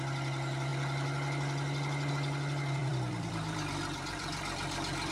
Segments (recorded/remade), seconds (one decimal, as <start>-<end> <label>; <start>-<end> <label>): 0.0-2.8 recorded; 2.8-5.1 remade